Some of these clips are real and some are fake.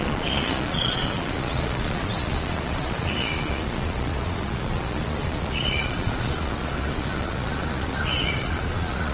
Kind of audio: fake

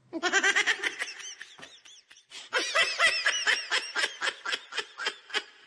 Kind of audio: real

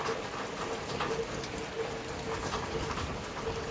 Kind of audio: real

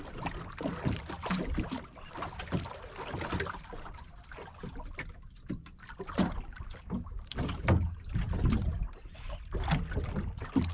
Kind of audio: real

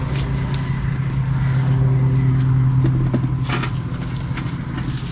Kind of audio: real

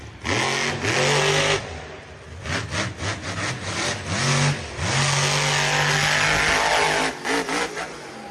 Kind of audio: real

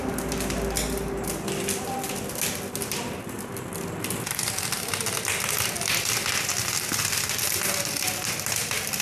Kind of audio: real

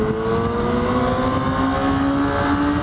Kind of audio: real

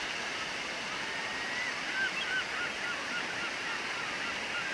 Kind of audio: real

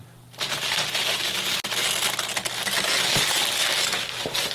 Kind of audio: real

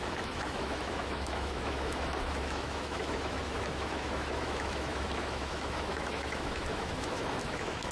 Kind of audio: fake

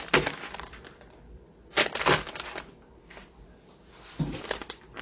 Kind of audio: real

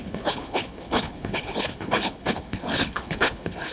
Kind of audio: fake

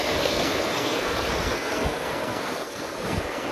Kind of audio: fake